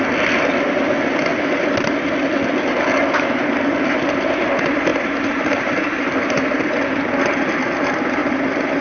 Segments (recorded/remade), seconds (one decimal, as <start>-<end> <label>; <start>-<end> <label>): 0.0-4.9 recorded; 4.9-5.7 remade; 5.7-8.2 recorded; 8.2-8.8 remade